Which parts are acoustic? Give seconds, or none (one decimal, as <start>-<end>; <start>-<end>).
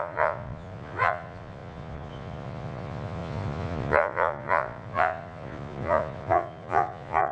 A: none